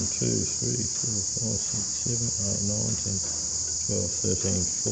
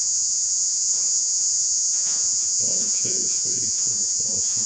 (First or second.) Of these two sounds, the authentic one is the first